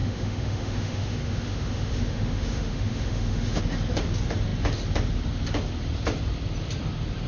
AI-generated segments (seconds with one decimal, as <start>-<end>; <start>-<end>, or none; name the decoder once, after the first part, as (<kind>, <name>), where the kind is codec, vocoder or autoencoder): 0.0-3.6 (autoencoder, DAC-VAE)